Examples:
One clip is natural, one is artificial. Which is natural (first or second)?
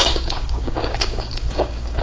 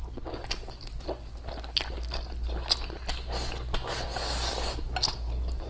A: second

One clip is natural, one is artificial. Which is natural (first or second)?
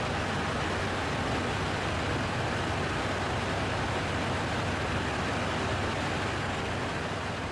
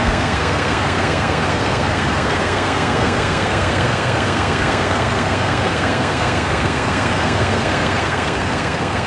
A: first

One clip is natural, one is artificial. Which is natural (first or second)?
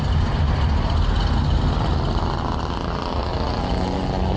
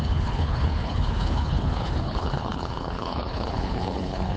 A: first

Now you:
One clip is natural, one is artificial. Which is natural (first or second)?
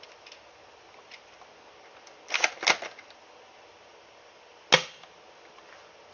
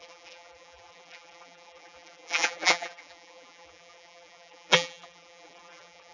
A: first